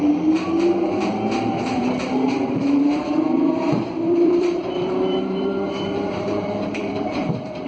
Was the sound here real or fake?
fake